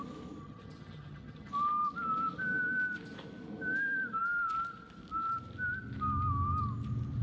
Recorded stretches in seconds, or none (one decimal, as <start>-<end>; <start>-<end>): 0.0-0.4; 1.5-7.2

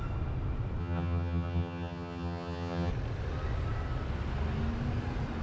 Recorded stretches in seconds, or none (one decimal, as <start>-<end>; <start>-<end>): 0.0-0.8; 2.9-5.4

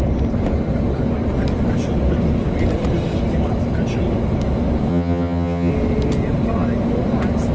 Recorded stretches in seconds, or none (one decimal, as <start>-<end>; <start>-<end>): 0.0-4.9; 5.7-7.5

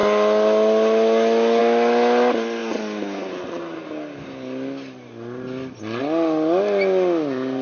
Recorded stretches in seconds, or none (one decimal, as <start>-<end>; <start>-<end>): 0.0-7.6

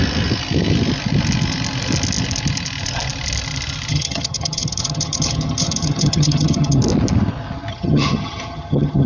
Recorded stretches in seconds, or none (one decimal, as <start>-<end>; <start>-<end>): 0.0-3.9; 6.8-7.7